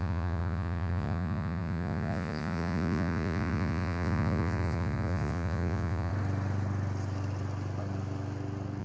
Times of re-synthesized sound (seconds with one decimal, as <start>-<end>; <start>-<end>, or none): 0.0-6.1